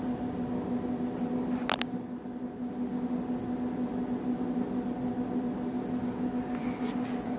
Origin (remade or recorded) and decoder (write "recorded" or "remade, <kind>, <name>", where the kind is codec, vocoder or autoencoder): recorded